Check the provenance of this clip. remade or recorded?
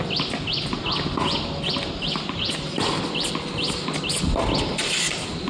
recorded